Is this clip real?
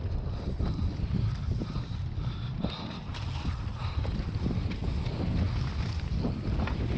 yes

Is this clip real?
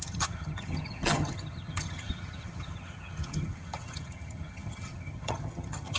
no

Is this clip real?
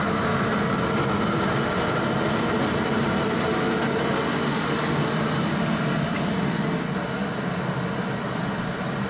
yes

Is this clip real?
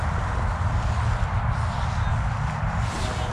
yes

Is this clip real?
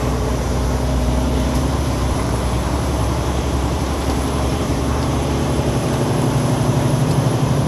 no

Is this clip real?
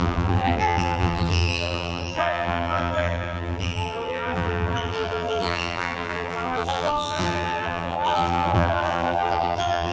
no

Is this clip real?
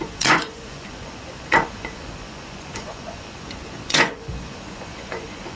no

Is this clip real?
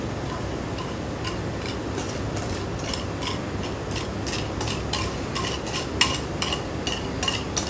yes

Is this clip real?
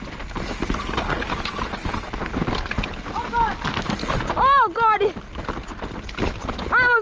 yes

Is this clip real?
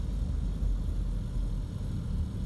yes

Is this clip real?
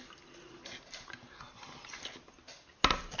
yes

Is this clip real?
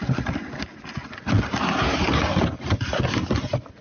yes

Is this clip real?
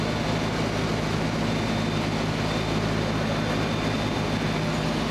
yes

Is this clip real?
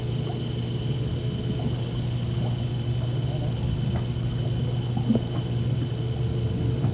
yes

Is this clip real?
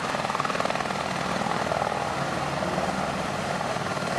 yes